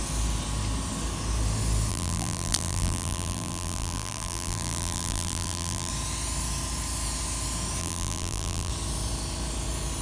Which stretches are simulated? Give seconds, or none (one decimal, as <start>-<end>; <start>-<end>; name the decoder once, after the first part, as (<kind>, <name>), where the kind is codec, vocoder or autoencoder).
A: 1.9-5.9 (vocoder, BigVGAN v2); 7.8-8.7